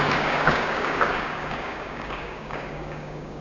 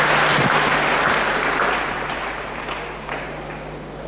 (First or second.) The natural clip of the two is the second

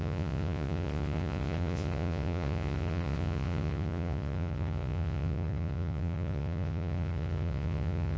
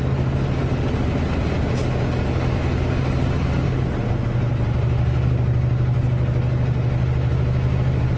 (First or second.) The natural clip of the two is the second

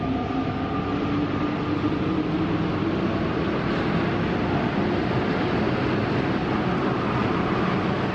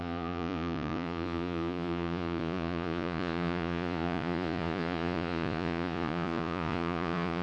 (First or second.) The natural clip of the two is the first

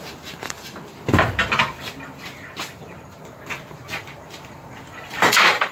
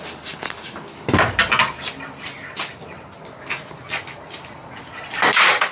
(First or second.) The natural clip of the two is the second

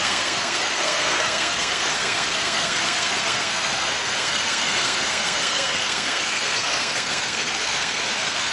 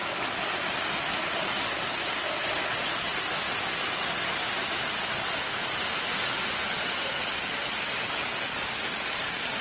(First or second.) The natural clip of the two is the second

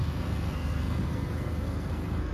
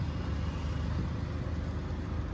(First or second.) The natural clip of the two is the second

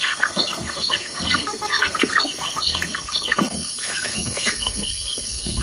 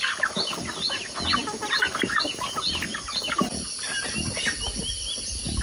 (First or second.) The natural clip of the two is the second